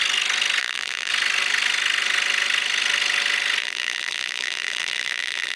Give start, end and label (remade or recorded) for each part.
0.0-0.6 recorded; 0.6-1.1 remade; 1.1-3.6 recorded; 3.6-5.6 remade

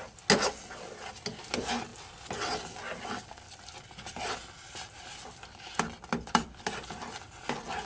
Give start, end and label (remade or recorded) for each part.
0.0-7.9 recorded

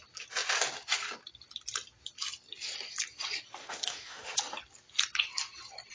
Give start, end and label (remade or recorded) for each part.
0.0-3.6 recorded; 3.6-4.4 remade; 4.4-5.9 recorded